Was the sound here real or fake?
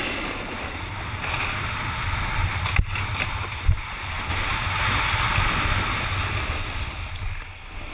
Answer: real